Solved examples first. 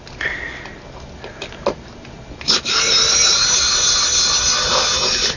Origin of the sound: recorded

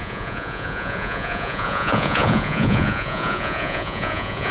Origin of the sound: remade